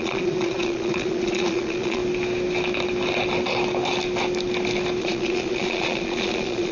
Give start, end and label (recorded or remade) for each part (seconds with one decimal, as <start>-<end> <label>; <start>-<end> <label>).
0.0-2.0 remade; 2.0-5.0 recorded; 5.0-6.7 remade